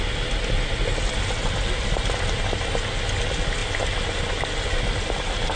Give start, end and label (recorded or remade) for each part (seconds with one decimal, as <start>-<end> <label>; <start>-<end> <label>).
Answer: 0.0-5.6 recorded